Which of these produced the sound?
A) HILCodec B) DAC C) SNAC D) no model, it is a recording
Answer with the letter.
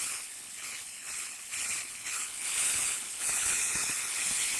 A